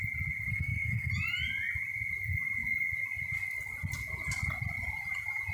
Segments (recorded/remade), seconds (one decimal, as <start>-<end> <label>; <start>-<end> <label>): 0.0-0.5 recorded; 0.5-1.1 remade; 1.1-5.5 recorded